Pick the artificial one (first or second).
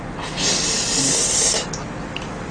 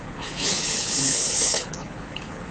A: second